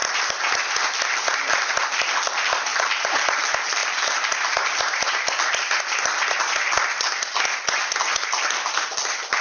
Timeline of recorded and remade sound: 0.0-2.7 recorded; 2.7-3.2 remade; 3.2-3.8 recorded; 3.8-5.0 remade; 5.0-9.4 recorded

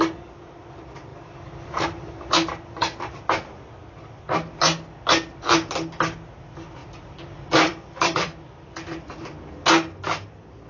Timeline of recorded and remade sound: 0.0-1.1 recorded; 1.1-2.3 remade; 2.3-6.8 recorded; 6.8-9.1 remade; 9.1-10.7 recorded

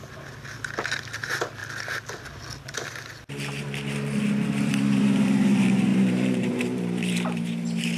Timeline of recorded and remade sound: 0.0-5.9 recorded; 5.9-8.0 remade